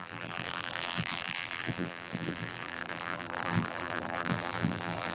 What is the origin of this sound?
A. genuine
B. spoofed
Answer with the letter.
B